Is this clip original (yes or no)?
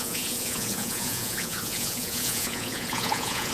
no